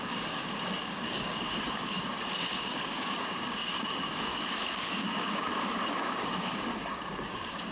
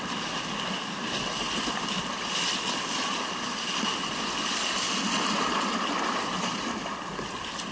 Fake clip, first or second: first